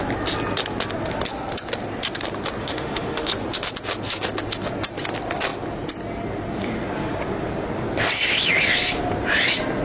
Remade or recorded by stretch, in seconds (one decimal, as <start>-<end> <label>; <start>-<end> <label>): 0.0-2.6 recorded; 2.6-3.3 remade; 3.3-9.8 recorded